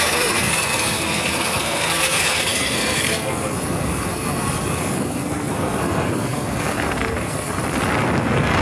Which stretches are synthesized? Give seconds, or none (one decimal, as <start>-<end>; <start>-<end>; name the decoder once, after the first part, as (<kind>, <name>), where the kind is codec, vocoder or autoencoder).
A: 0.0-7.6 (codec, SNAC); 8.2-8.6